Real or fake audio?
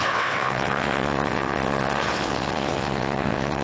fake